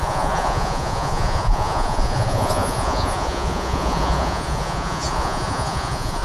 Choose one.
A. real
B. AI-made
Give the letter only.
B